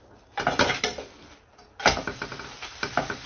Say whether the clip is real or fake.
real